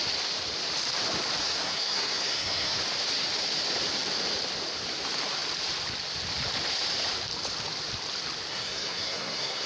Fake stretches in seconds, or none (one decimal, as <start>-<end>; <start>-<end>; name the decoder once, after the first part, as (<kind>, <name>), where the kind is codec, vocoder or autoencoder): 1.4-2.8 (codec, SNAC); 8.5-9.7